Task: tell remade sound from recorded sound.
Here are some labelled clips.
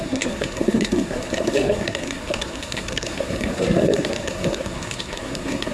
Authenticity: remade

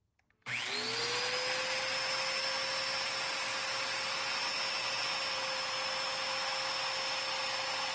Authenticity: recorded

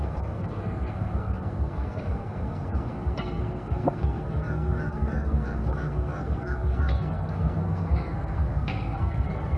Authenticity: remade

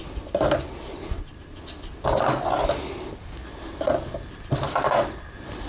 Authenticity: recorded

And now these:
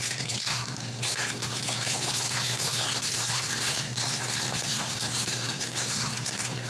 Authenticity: remade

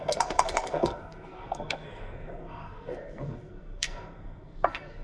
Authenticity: remade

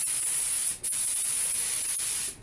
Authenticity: recorded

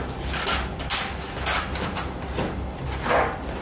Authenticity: recorded